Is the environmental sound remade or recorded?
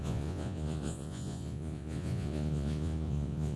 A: remade